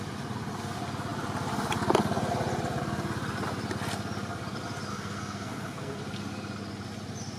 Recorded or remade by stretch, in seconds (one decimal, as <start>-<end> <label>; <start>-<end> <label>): 0.0-4.9 recorded; 4.9-6.0 remade; 6.0-7.4 recorded